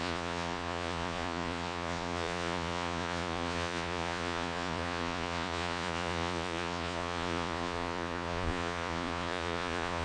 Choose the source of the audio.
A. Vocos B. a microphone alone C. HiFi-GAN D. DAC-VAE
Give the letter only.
A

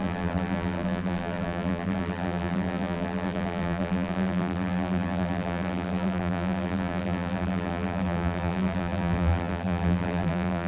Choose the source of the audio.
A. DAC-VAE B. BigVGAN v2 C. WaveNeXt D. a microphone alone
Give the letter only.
B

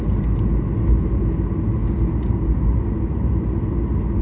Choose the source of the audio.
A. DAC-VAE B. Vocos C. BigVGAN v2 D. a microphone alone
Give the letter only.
D